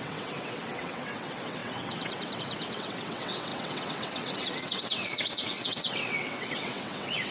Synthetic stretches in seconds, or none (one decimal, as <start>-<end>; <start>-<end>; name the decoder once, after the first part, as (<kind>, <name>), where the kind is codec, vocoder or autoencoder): 0.0-7.3 (vocoder, WaveNeXt)

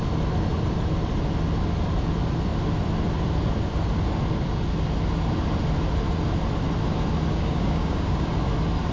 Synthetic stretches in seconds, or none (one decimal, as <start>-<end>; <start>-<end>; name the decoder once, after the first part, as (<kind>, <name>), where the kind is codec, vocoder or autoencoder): 7.3-8.3 (codec, DAC)

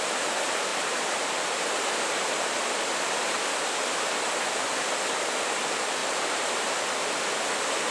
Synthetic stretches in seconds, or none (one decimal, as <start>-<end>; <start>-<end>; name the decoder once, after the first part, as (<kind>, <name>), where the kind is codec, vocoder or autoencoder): 0.7-1.8 (vocoder, BigVGAN v2); 6.0-6.7

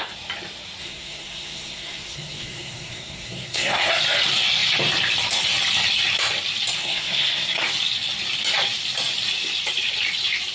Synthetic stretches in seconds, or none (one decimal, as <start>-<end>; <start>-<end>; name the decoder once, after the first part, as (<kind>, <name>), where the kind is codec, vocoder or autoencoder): 0.8-3.9 (codec, SNAC); 6.8-7.6

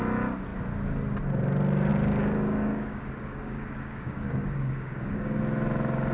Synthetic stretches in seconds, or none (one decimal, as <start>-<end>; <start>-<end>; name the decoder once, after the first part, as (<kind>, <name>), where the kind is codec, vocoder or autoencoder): 1.9-5.4 (codec, DAC)

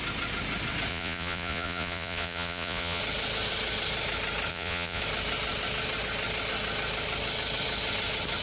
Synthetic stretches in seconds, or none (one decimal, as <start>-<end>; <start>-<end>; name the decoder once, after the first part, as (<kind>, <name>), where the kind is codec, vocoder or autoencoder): 0.9-3.0 (vocoder, Vocos); 4.5-5.0